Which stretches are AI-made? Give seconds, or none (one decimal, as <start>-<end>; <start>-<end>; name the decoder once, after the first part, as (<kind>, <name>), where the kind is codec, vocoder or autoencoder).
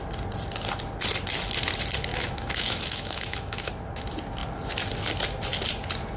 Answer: 2.1-3.7 (autoencoder, DAC-VAE)